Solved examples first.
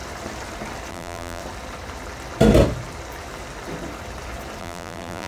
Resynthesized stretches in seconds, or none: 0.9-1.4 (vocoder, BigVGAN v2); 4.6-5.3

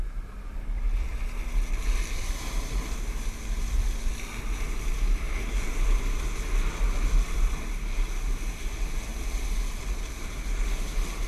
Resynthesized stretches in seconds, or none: 9.1-9.8 (vocoder, BigVGAN v2)

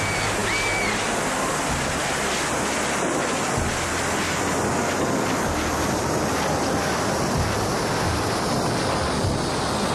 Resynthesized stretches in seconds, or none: none

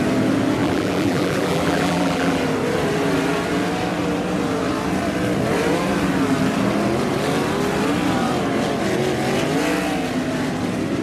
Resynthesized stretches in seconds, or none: 0.6-2.4 (vocoder, BigVGAN v2)